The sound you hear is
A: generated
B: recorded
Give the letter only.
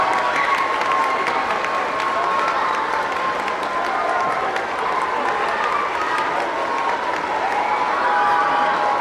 B